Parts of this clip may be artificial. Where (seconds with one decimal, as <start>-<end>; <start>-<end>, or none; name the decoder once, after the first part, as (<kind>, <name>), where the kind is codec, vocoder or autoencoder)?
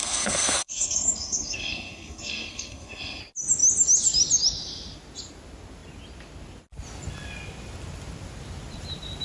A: 0.0-3.2 (codec, SNAC)